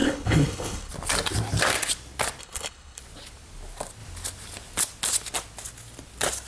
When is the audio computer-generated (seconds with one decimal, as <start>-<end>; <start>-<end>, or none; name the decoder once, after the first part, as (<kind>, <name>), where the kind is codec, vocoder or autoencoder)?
0.0-0.9 (codec, HILCodec); 2.4-3.0